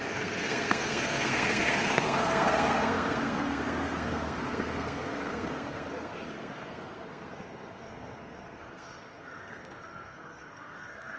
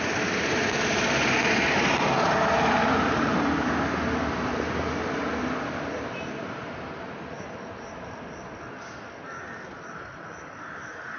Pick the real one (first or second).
second